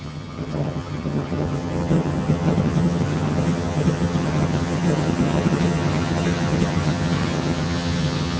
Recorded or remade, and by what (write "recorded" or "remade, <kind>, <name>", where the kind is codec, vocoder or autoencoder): remade, vocoder, HiFi-GAN